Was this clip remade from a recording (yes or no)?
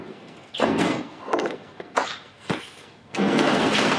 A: yes